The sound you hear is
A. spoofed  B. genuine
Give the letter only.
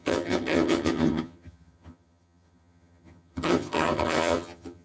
A